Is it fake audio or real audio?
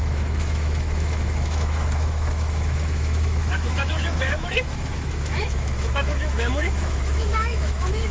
fake